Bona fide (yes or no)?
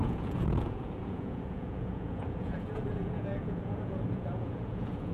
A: no